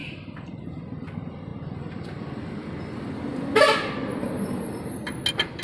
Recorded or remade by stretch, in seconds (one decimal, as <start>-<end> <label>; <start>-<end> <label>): 0.0-0.6 remade; 0.6-5.6 recorded

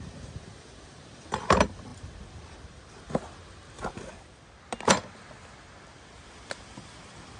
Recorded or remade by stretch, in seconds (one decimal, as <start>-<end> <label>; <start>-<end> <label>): 0.0-0.5 recorded; 0.5-1.1 remade; 1.1-7.4 recorded